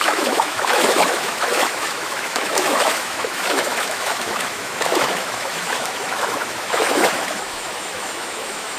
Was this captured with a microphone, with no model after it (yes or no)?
no